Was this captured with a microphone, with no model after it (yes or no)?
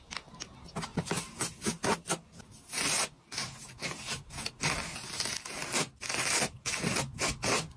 yes